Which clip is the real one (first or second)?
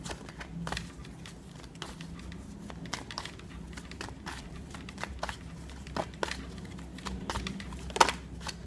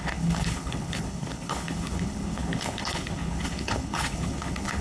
first